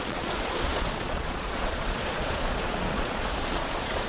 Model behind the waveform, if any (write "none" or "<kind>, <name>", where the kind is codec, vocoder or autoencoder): vocoder, Vocos